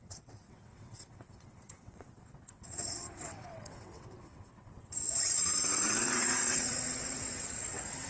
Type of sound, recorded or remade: remade